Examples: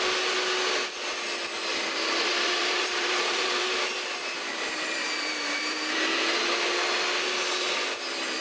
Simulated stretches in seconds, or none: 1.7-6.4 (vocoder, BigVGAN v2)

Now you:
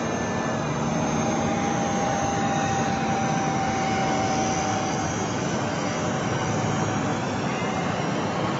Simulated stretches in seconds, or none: 2.3-2.8 (vocoder, BigVGAN v2); 7.1-8.0

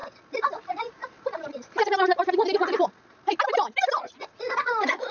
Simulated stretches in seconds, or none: 0.5-1.0 (vocoder, Vocos); 4.1-5.1